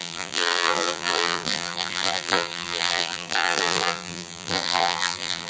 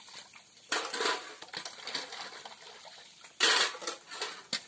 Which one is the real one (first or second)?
second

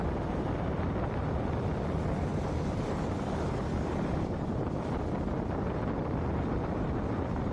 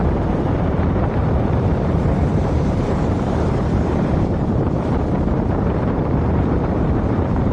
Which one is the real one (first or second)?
first